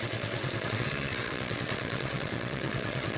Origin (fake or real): fake